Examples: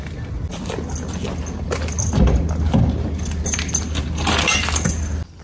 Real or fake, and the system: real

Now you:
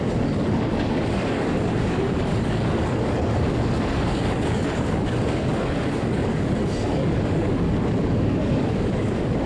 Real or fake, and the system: fake, codec, DAC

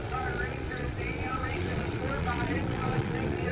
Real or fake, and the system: fake, vocoder, Vocos